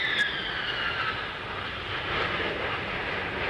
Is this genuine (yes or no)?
yes